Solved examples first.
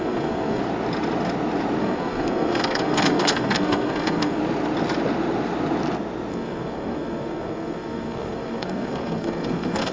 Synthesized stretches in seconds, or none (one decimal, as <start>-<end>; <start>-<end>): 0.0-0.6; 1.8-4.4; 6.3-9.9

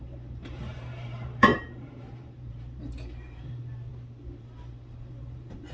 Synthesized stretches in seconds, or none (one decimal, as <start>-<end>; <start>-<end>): 0.0-3.9; 4.4-5.7

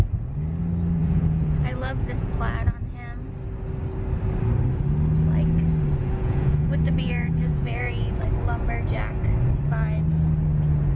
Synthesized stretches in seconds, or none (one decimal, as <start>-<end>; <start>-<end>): 1.0-2.4; 6.0-8.2

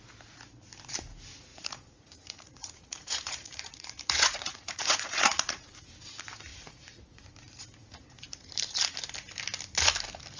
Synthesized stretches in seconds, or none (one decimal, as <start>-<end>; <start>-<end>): 1.5-5.9; 6.5-7.3

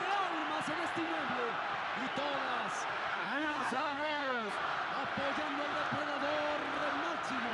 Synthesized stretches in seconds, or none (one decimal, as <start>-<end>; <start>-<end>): 3.1-4.5

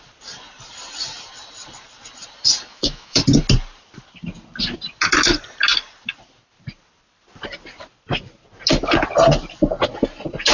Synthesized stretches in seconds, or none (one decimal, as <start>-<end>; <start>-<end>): 2.7-3.2

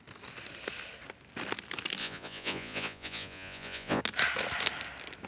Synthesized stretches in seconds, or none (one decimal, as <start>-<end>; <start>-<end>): 2.0-4.0